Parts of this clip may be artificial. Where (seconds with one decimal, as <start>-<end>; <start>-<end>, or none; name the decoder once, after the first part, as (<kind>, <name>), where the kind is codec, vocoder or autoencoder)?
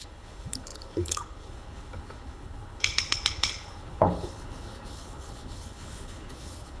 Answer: 0.0-6.8 (codec, HILCodec)